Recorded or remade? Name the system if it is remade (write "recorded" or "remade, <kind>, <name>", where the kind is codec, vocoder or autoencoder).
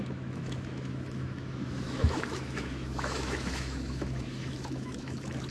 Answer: remade, autoencoder, DAC-VAE